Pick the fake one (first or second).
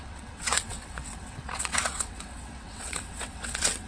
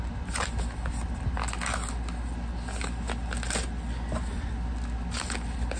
first